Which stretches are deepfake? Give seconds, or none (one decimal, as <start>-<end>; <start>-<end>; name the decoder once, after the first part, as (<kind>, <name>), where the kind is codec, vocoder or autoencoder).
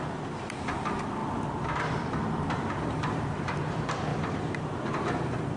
0.0-5.6 (vocoder, BigVGAN v2)